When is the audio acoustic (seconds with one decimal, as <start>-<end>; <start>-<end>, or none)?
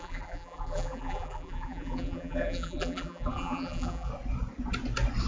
4.1-5.3